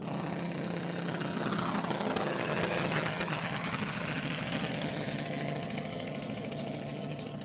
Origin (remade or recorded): remade